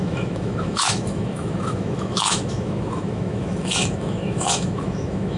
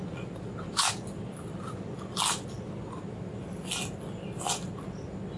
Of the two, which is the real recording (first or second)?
second